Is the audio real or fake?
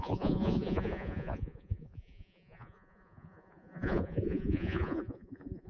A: fake